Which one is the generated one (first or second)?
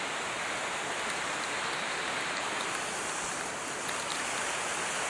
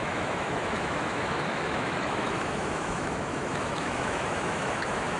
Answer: second